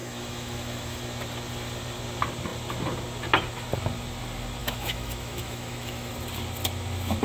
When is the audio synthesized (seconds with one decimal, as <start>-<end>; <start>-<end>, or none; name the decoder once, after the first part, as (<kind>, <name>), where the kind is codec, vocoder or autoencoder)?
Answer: 0.0-1.0 (autoencoder, DAC-VAE); 4.6-6.1